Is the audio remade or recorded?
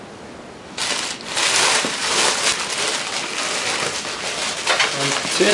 recorded